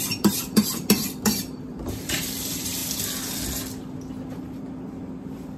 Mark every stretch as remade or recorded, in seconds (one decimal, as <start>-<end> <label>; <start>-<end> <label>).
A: 0.0-2.8 remade; 2.8-4.4 recorded; 4.4-5.6 remade